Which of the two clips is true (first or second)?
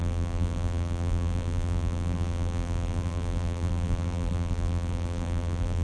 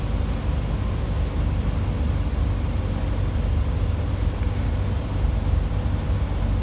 second